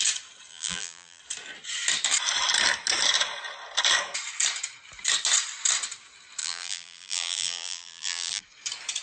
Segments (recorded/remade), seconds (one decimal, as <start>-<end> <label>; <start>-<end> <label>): 0.0-0.5 recorded; 0.5-1.2 remade; 1.2-6.4 recorded; 6.4-8.4 remade; 8.4-9.0 recorded